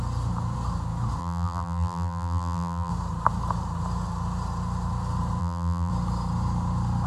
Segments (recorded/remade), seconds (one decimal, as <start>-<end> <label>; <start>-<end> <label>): 0.0-1.2 recorded; 1.2-2.9 remade; 2.9-5.4 recorded; 5.4-5.9 remade; 5.9-7.1 recorded